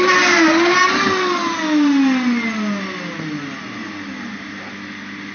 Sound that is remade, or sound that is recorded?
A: recorded